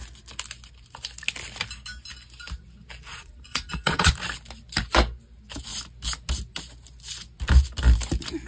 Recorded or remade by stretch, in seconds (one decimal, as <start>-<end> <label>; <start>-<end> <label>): 0.0-3.1 recorded; 3.1-4.1 remade; 4.1-8.5 recorded